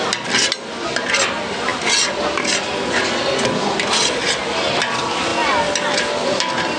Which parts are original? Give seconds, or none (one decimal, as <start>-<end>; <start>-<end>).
0.0-6.8